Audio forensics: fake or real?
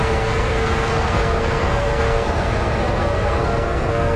fake